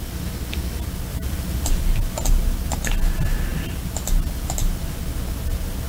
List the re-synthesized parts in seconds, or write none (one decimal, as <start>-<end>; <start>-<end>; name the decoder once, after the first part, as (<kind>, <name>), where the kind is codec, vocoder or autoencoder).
none